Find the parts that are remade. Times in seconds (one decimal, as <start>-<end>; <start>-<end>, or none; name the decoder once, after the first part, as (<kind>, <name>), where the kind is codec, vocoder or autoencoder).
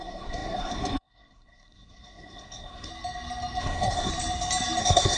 0.0-2.9 (codec, SNAC); 3.6-4.1; 4.8-5.2